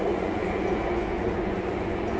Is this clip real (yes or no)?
no